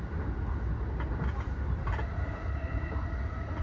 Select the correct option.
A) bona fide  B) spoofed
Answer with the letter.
A